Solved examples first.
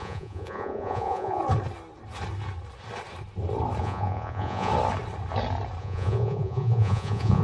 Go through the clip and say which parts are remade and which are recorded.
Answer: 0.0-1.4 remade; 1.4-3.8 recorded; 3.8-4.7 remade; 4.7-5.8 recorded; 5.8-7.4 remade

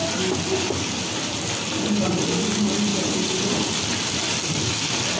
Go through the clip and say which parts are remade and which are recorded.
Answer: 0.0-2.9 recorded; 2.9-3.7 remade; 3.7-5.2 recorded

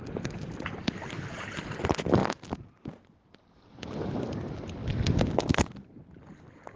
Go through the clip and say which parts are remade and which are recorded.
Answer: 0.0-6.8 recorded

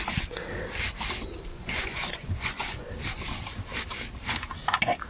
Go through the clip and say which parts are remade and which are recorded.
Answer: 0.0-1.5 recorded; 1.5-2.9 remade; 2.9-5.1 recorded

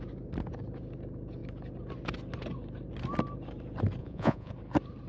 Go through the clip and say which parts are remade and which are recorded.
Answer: 0.0-4.0 recorded; 4.0-4.5 remade; 4.5-5.1 recorded

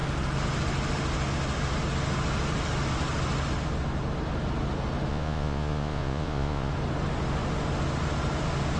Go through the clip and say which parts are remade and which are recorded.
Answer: 0.0-5.1 recorded; 5.1-6.7 remade; 6.7-8.8 recorded

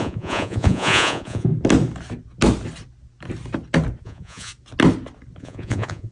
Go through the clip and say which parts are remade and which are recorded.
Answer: 0.0-1.5 remade; 1.5-4.0 recorded; 4.0-4.5 remade; 4.5-5.4 recorded; 5.4-6.1 remade